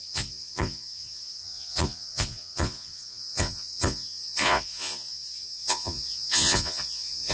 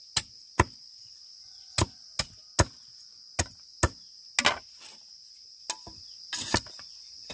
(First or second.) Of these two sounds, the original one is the second